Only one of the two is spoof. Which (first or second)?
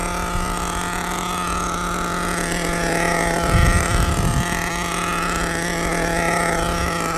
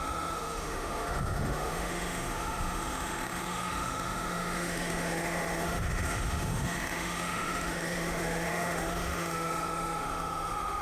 second